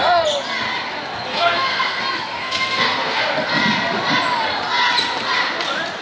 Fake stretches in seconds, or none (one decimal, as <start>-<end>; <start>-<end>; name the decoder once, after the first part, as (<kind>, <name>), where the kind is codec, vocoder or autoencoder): 1.3-2.0 (codec, SNAC); 2.4-3.2

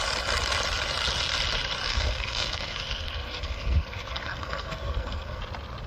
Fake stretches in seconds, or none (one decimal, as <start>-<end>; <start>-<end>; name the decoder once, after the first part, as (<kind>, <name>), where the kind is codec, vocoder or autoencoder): 1.9-5.4 (codec, SNAC)